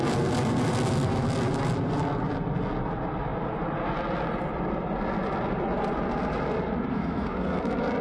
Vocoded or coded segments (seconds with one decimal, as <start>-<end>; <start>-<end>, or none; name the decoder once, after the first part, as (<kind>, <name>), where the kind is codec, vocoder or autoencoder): 6.9-7.6 (codec, SNAC)